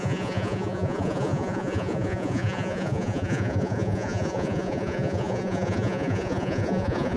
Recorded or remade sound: remade